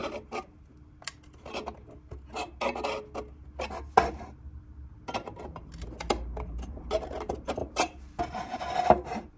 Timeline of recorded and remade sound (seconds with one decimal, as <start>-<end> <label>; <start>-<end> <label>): 0.0-7.6 recorded; 7.6-8.2 remade; 8.2-9.4 recorded